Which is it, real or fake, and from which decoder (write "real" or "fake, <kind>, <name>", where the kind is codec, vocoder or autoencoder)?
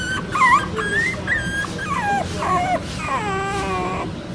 real